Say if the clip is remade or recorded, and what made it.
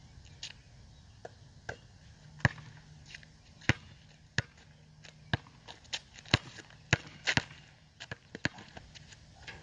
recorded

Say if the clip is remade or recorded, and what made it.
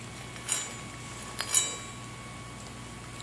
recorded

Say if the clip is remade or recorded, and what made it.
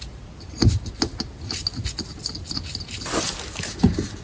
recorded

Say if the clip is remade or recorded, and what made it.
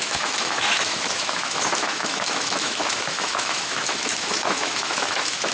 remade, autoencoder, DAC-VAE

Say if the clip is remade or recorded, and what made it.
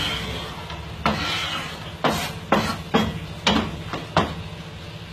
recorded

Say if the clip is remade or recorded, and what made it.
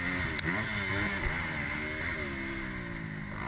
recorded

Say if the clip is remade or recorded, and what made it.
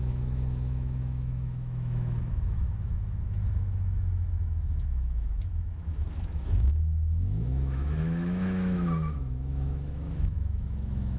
remade, autoencoder, DAC-VAE